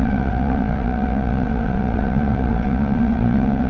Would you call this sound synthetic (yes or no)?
yes